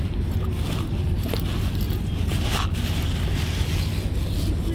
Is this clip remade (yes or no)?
no